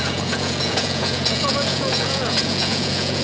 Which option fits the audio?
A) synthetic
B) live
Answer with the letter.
A